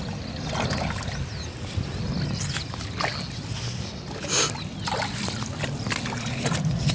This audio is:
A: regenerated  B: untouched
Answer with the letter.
B